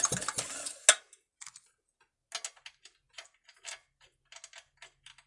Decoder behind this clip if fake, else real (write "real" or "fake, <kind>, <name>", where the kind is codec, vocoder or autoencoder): real